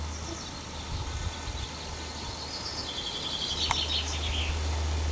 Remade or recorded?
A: recorded